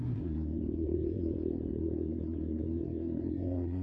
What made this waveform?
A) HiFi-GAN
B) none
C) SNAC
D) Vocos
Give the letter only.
C